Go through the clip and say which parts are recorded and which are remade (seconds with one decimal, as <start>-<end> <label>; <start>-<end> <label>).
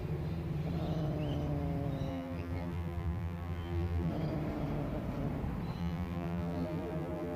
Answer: 0.0-2.1 recorded; 2.1-4.1 remade; 4.1-5.8 recorded; 5.8-7.4 remade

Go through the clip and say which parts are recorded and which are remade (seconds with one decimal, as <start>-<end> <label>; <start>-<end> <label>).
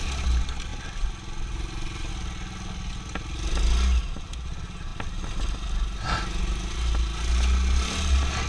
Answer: 0.0-8.5 recorded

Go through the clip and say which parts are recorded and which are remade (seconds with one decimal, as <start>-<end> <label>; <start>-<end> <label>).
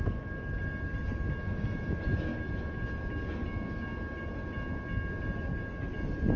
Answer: 0.0-6.4 recorded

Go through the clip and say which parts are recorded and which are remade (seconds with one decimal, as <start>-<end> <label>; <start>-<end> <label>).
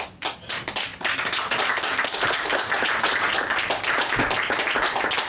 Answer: 0.0-5.3 recorded